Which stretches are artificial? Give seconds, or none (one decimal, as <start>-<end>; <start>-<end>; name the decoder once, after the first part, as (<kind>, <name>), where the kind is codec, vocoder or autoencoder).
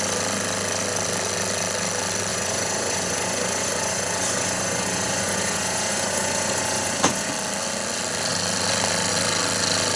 2.3-7.3 (vocoder, Vocos)